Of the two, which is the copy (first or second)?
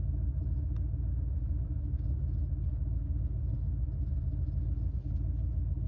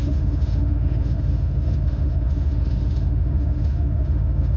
second